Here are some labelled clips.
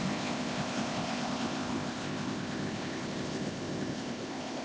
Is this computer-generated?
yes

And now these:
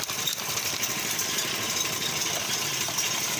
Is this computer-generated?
yes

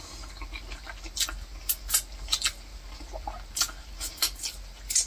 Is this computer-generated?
no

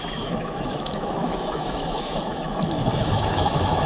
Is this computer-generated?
yes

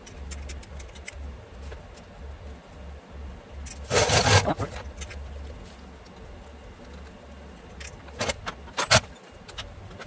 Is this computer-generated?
no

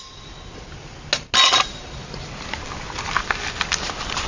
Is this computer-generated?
no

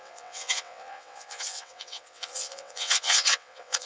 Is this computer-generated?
yes